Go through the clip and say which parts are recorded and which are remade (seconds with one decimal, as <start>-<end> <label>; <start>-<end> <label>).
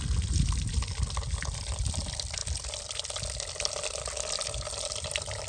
0.0-5.5 recorded